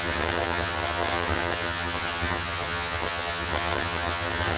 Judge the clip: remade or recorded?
remade